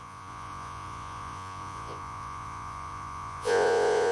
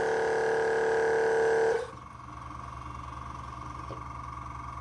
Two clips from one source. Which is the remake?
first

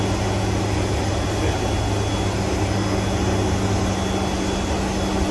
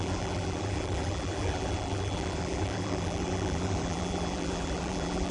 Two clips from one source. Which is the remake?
second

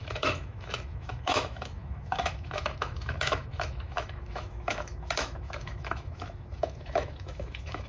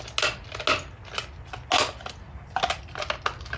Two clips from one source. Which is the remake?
first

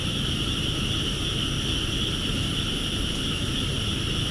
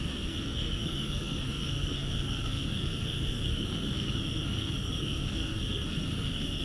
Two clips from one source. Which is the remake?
second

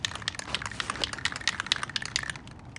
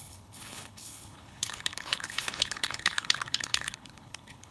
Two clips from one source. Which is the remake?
second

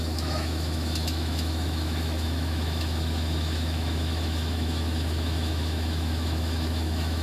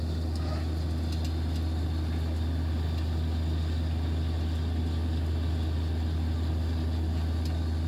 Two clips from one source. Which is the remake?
first